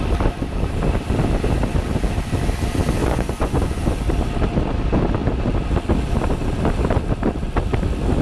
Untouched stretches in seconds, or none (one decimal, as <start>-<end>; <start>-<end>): 0.0-3.0; 3.8-8.2

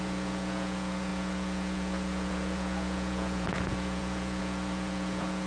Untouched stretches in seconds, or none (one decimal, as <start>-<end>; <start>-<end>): none

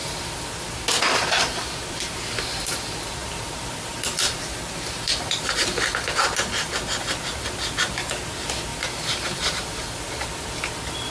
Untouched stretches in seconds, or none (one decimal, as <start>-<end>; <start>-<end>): 0.0-3.2; 5.5-8.7; 10.7-11.1